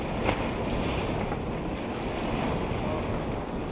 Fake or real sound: real